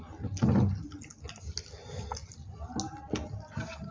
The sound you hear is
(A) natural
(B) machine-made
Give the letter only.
A